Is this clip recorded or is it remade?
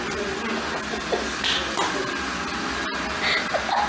recorded